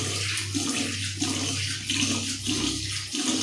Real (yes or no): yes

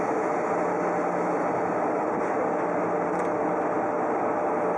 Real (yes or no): yes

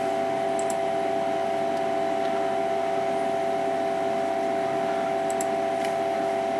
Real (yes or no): yes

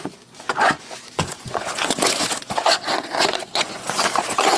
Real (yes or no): no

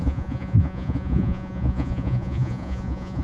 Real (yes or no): no